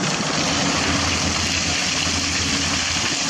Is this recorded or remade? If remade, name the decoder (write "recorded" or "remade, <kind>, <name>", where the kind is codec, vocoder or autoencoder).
recorded